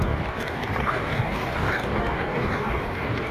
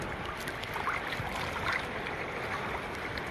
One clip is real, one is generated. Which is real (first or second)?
second